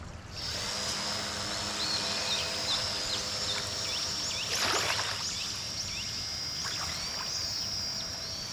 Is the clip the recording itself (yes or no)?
yes